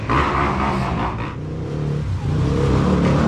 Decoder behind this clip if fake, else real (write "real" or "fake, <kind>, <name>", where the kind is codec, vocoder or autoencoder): real